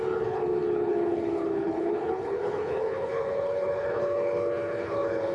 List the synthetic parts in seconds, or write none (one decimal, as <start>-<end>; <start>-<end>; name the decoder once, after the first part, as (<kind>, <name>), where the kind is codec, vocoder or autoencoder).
0.0-5.3 (codec, HILCodec)